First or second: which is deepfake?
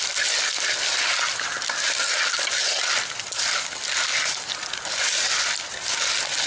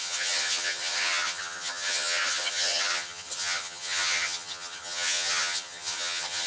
second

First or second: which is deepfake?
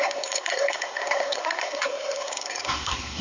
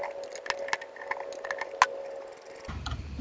first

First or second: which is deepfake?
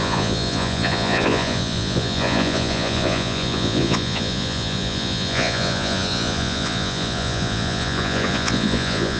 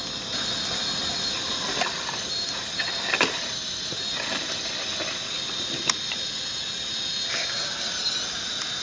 first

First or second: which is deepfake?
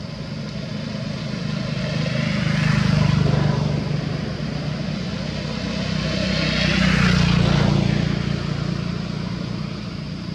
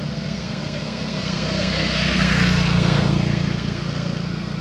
second